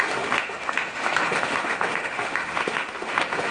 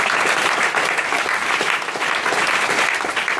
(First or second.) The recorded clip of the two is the second